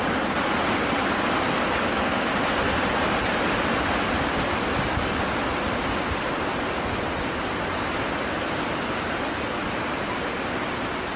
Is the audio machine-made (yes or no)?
no